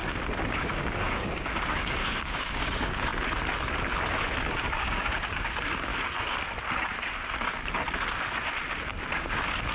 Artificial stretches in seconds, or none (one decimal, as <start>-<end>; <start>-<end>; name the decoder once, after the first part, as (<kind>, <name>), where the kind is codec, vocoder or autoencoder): 0.5-3.1 (codec, DAC); 4.6-5.9; 9.2-9.7